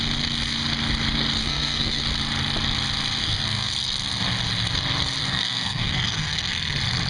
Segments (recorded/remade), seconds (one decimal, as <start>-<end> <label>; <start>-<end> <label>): 0.0-1.4 recorded; 1.4-2.0 remade; 2.0-3.2 recorded; 3.2-3.7 remade; 3.7-5.2 recorded; 5.2-6.5 remade; 6.5-7.1 recorded